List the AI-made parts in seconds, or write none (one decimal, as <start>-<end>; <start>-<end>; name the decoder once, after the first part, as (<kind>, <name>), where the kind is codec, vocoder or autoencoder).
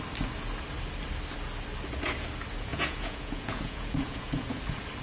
2.7-4.6 (vocoder, Vocos)